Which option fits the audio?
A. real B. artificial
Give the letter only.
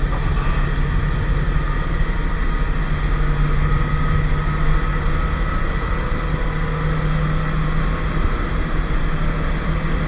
A